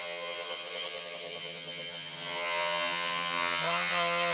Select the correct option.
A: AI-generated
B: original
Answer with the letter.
A